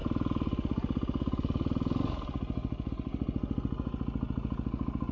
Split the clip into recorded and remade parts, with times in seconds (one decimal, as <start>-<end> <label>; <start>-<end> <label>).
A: 0.0-5.1 recorded